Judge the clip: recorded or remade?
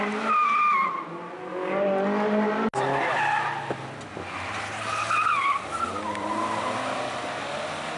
recorded